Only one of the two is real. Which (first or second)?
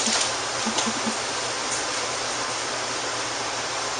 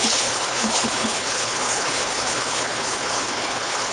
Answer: first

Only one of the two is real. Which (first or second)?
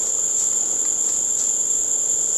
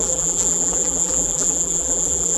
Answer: first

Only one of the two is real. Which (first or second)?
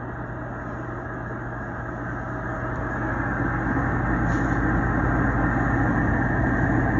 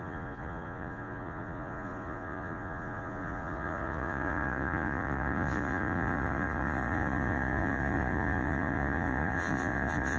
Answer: first